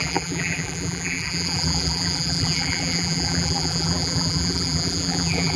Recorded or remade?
remade